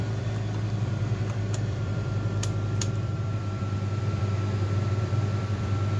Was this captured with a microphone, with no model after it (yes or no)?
no